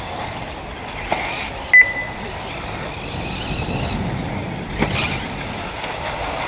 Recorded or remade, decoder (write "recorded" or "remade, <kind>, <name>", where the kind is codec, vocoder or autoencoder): recorded